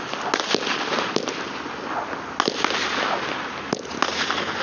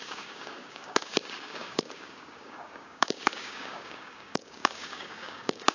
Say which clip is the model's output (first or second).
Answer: second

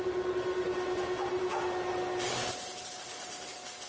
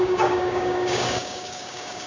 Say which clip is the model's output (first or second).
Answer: second